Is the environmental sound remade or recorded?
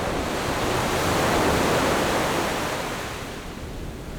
recorded